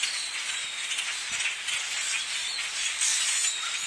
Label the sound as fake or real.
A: real